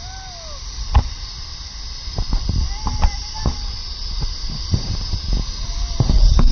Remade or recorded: recorded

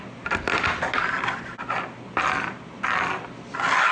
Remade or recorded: recorded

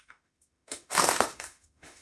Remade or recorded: remade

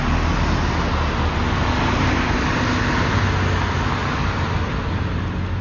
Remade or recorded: recorded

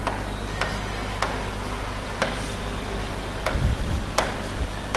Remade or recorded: recorded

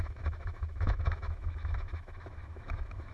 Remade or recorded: remade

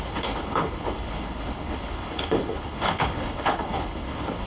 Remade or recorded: remade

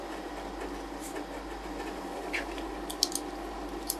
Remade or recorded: recorded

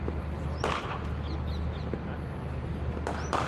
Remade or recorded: recorded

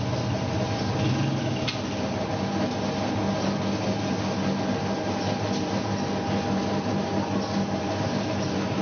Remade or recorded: recorded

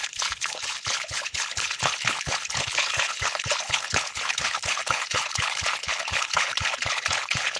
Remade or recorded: remade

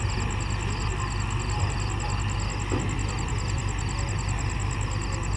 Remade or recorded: recorded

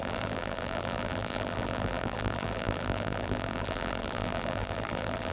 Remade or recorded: remade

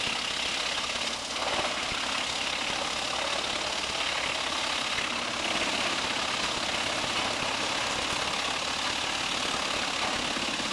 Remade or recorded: recorded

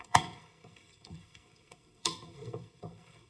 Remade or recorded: remade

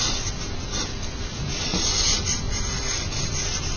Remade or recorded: recorded